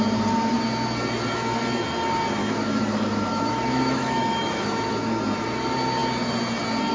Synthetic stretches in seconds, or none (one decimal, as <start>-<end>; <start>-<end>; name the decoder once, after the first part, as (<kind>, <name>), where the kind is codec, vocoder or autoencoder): 2.4-5.2 (autoencoder, DAC-VAE)